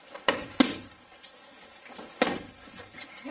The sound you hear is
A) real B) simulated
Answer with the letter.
A